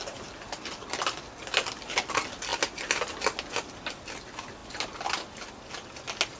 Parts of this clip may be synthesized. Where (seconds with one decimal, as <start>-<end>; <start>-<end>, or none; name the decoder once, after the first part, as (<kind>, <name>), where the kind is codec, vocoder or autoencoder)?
none